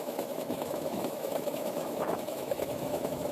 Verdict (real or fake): fake